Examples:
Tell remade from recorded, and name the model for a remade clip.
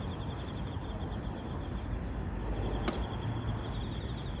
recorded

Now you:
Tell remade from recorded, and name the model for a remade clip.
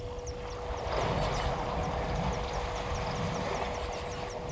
recorded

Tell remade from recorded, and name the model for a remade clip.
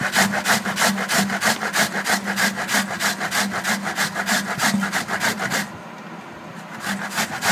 recorded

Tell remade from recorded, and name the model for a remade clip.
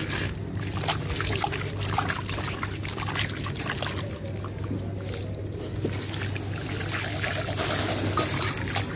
recorded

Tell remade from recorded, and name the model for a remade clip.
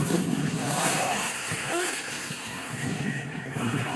remade, codec, SNAC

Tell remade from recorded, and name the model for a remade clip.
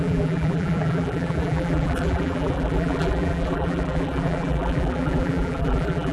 remade, vocoder, BigVGAN v2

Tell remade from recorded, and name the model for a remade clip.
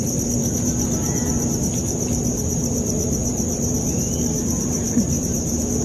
remade, vocoder, BigVGAN v2